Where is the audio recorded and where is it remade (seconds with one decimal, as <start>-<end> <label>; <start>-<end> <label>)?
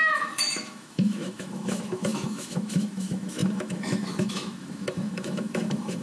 0.0-6.0 remade